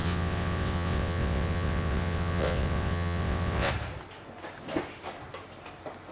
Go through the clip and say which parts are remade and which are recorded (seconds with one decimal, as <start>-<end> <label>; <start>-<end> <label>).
0.0-3.7 remade; 3.7-6.1 recorded